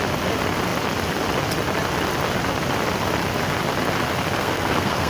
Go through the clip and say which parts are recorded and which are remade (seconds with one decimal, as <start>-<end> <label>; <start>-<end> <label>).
0.0-4.4 recorded; 4.4-5.1 remade